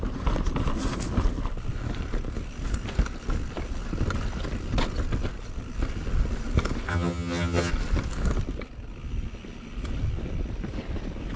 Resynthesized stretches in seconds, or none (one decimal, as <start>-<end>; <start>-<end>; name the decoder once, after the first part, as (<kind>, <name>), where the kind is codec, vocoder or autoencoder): 6.9-7.7 (vocoder, HiFi-GAN)